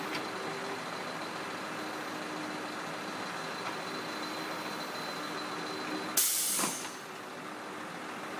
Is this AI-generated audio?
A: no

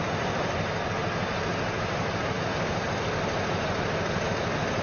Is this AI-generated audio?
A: no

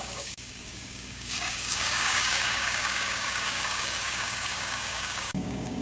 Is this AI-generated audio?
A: yes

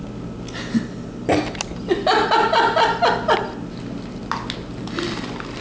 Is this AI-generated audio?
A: no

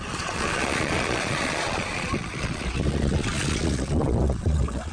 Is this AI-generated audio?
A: yes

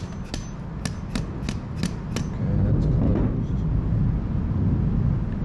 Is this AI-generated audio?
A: no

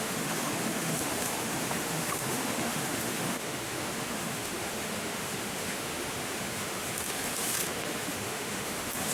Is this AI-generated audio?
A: yes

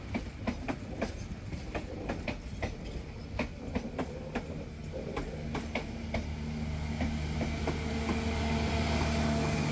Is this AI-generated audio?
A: no